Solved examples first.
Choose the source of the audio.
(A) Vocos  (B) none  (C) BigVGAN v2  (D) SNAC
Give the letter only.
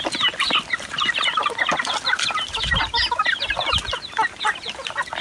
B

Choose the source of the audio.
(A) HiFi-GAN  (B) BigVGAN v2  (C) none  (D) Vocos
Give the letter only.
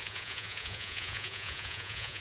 D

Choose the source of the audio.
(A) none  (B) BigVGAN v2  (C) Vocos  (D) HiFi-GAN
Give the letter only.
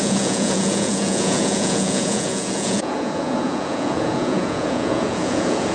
C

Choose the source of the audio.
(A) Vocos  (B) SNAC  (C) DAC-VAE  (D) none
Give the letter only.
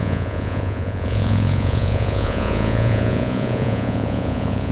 A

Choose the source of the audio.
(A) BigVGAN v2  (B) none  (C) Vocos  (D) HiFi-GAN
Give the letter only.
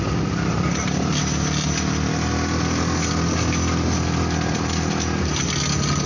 B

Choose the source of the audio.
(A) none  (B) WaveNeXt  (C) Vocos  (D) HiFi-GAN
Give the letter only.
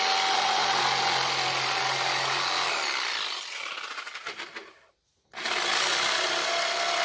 A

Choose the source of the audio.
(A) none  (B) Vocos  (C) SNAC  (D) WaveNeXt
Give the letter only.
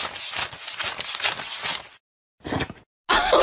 A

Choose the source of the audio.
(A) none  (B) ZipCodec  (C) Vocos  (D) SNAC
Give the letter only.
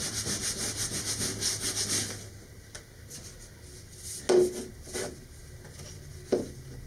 A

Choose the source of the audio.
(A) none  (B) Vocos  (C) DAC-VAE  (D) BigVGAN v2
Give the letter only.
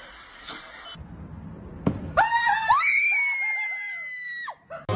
A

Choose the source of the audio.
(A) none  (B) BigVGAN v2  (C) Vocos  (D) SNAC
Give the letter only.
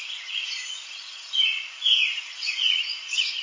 C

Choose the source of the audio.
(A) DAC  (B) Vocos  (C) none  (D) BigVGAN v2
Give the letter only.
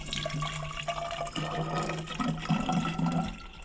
C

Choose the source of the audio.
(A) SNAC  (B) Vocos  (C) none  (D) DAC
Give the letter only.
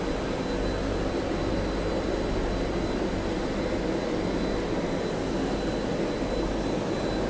C